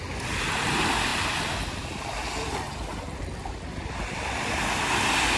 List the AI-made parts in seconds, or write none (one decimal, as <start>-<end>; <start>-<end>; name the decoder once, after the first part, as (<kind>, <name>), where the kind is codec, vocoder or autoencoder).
none